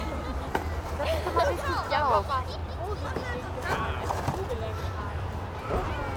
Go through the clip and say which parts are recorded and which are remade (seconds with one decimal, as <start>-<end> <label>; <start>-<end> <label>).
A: 0.0-6.2 recorded